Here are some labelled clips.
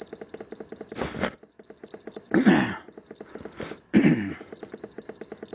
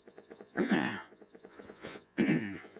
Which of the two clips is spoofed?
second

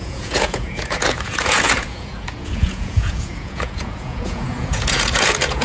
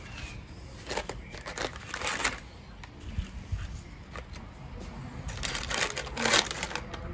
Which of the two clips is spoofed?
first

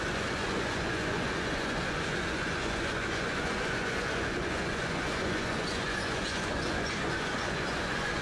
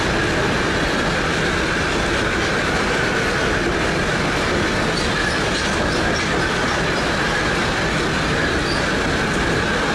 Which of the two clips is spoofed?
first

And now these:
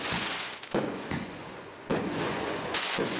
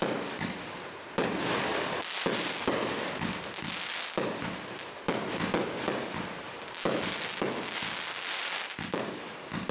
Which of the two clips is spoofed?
first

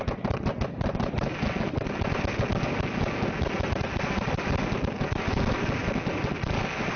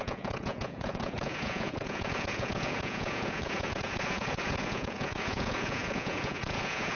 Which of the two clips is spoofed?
second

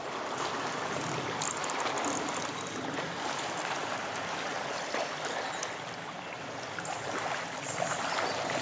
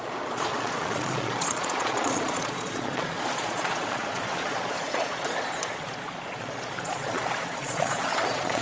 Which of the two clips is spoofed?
second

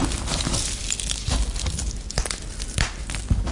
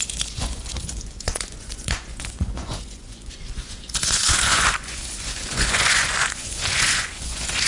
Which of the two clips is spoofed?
second